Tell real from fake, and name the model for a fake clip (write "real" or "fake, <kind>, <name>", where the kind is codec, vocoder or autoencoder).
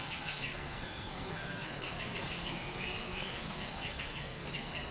fake, codec, SNAC